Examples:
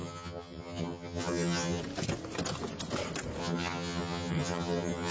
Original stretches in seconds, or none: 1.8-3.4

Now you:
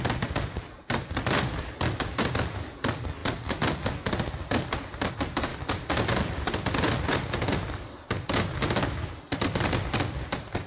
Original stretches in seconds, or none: 0.0-5.5

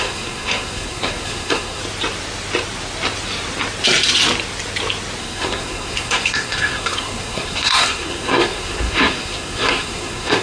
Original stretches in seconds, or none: 1.8-5.2

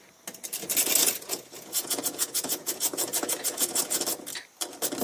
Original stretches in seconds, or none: 0.0-1.0; 4.0-5.0

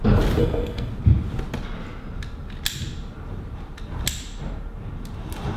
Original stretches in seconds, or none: 0.0-0.4; 0.9-5.6

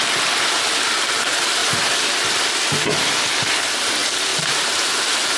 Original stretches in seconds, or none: 0.0-1.6; 3.5-4.3; 5.0-5.4

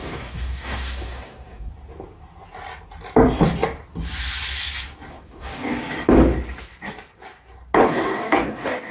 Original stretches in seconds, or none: 1.7-5.1; 5.8-7.8